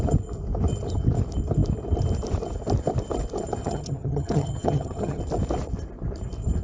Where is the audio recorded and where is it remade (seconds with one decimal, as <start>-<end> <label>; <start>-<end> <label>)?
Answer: 0.0-3.6 recorded; 3.6-5.2 remade; 5.2-6.6 recorded